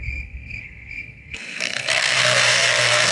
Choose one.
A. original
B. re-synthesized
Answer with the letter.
B